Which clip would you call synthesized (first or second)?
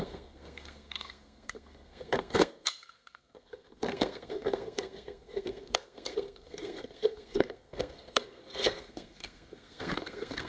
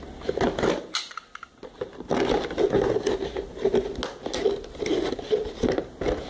first